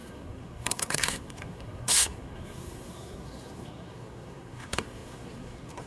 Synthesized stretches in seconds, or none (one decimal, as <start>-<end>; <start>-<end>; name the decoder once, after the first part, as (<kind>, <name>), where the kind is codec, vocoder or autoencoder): 0.0-5.9 (codec, SNAC)